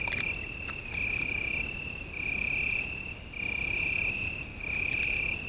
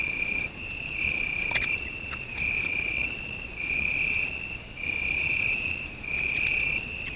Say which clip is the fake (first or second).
second